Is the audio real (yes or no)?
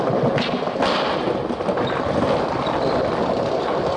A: yes